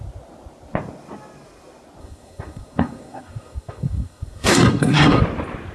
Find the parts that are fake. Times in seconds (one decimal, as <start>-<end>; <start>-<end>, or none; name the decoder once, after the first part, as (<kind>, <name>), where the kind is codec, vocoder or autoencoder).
2.0-5.2 (codec, SNAC)